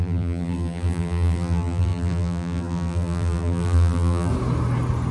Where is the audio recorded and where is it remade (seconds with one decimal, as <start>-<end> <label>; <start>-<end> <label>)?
0.0-4.3 remade; 4.3-5.1 recorded